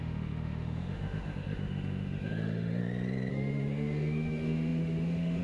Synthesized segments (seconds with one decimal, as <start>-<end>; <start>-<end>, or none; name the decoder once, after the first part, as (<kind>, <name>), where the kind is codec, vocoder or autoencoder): 0.0-2.8 (autoencoder, DAC-VAE); 3.3-5.4